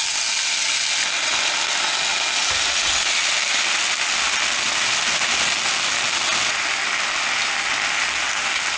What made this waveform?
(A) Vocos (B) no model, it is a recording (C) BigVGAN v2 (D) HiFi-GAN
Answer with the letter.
B